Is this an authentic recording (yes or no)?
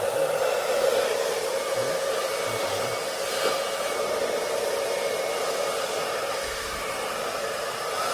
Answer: yes